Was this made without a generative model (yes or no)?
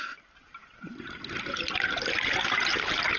yes